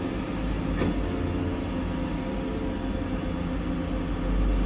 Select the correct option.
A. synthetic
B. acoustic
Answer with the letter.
B